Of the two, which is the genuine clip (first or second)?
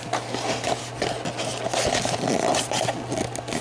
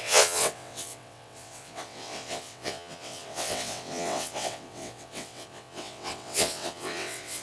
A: first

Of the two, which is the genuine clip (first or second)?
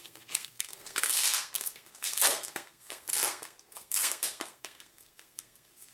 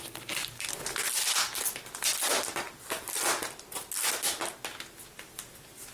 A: second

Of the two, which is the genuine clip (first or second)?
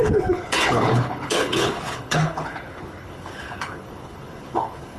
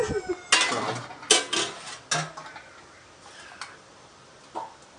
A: second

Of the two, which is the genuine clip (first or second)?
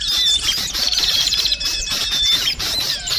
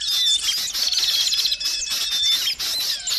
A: second